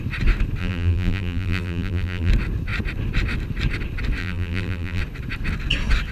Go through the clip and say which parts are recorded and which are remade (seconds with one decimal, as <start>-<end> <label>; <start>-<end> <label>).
0.0-0.6 recorded; 0.6-2.3 remade; 2.3-4.2 recorded; 4.2-5.0 remade; 5.0-6.1 recorded